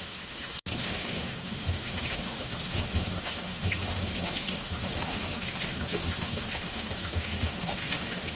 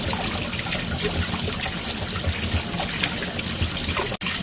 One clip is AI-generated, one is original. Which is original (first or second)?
second